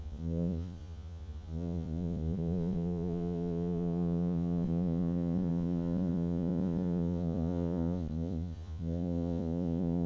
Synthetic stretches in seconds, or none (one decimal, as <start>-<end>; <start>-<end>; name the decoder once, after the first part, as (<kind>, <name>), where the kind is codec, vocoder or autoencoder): 0.0-10.1 (vocoder, Vocos)